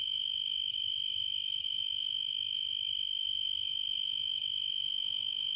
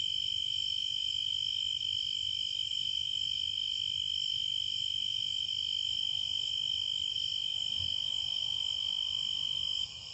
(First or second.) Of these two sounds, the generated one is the first